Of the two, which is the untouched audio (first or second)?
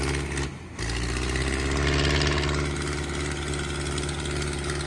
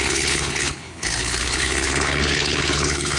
first